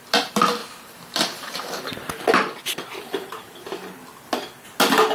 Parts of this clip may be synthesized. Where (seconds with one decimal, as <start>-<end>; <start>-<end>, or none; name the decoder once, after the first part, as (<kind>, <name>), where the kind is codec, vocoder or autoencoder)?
0.6-2.1 (vocoder, BigVGAN v2)

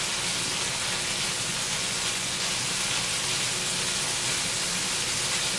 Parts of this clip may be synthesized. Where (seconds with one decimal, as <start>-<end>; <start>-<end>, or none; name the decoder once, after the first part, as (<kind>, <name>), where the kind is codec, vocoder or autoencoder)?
1.5-2.5 (vocoder, Vocos)

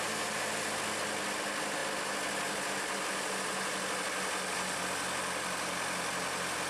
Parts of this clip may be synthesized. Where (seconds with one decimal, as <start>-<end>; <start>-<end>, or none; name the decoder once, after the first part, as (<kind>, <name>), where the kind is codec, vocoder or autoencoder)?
none

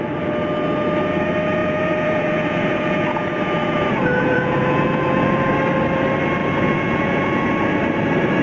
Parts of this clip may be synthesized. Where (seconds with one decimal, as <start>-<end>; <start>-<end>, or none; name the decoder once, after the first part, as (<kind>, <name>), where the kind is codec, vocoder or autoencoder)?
1.6-5.5 (vocoder, Vocos); 6.4-7.5